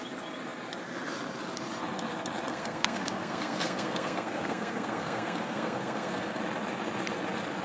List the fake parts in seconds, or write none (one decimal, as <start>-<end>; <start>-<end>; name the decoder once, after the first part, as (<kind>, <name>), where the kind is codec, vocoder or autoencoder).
2.5-6.4 (codec, SNAC)